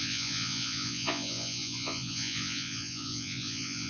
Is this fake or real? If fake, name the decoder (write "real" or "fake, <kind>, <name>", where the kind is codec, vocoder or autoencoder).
fake, vocoder, Vocos